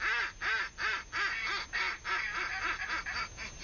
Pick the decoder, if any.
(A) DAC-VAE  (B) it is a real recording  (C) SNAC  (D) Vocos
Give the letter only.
B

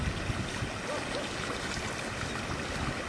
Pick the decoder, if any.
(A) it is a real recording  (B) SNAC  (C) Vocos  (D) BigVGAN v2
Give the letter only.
A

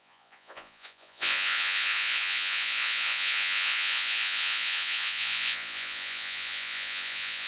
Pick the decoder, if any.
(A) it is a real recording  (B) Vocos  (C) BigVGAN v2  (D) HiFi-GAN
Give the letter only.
B